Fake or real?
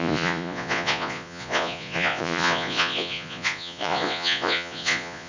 fake